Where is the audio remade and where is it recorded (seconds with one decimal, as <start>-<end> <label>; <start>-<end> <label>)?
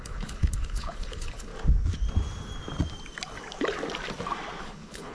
0.0-1.5 remade; 1.5-4.6 recorded; 4.6-5.1 remade